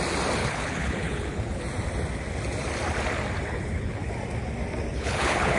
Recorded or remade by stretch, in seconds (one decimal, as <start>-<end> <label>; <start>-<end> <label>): 0.0-0.4 recorded; 0.4-1.6 remade; 1.6-3.5 recorded; 3.5-4.1 remade; 4.1-4.9 recorded; 4.9-5.6 remade